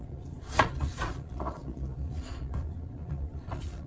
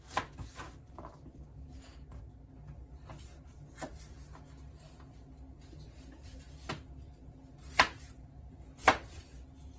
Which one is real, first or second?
second